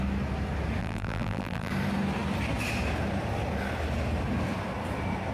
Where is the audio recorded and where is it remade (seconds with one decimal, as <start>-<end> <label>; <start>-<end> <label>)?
0.0-0.8 recorded; 0.8-1.7 remade; 1.7-5.3 recorded